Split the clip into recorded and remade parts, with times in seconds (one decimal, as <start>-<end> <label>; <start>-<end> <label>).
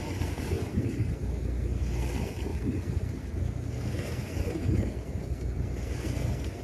0.0-6.6 remade